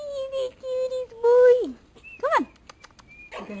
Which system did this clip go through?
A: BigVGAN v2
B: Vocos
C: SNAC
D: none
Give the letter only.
D